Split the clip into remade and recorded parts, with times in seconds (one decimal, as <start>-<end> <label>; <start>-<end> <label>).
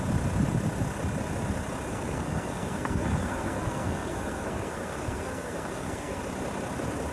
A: 0.0-1.9 recorded; 1.9-6.2 remade; 6.2-7.1 recorded